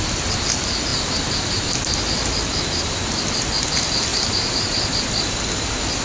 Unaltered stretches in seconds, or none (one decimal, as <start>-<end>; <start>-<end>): 0.0-0.9; 1.7-4.1; 4.6-6.0